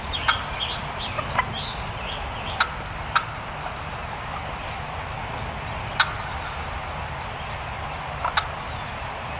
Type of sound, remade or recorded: recorded